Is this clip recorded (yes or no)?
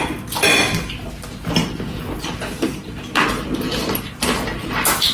yes